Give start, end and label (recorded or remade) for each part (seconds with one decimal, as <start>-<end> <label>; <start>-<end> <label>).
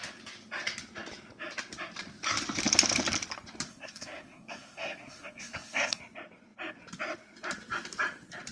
0.0-3.7 recorded; 3.7-6.0 remade; 6.0-8.5 recorded